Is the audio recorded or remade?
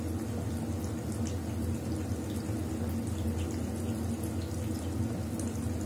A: recorded